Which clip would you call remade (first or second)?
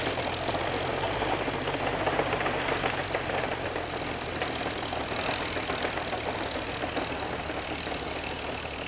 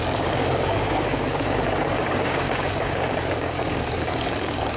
second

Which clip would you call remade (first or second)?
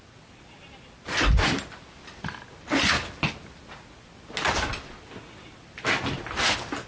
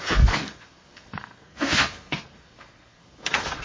second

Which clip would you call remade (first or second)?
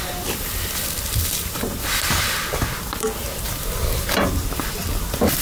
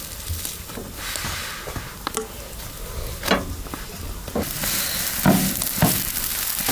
first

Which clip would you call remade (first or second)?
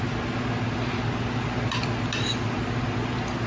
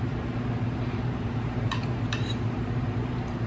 second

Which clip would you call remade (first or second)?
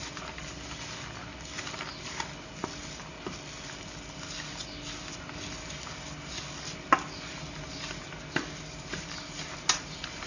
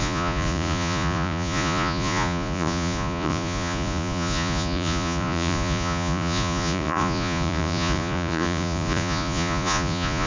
second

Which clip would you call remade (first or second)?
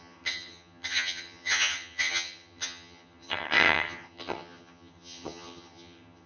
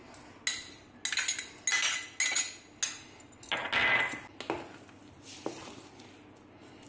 first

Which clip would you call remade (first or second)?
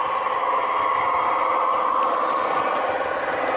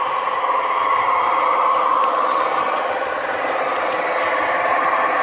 second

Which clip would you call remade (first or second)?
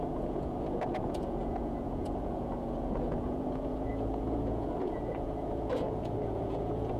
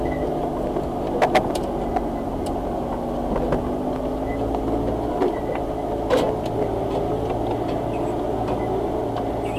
first